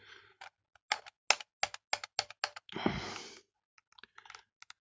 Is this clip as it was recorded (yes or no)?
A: yes